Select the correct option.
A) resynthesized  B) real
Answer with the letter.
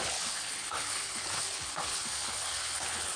A